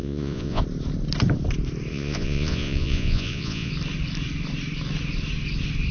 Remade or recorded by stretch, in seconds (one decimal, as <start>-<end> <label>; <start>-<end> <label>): 0.0-0.6 remade; 0.6-1.9 recorded; 1.9-3.7 remade; 3.7-5.9 recorded